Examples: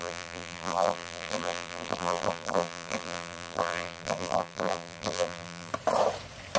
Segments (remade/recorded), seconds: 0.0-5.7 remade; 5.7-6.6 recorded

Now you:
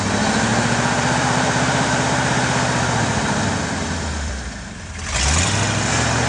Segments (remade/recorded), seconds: 0.0-0.5 recorded; 0.5-4.3 remade; 4.3-6.3 recorded

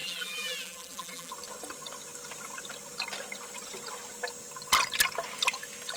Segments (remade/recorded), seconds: 0.0-1.3 remade; 1.3-6.0 recorded

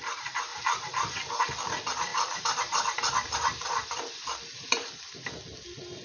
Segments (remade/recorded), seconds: 0.0-0.5 recorded; 0.5-1.4 remade; 1.4-2.1 recorded; 2.1-5.3 remade; 5.3-6.0 recorded

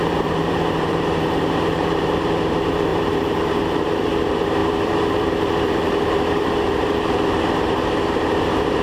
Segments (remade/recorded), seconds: 0.0-8.8 remade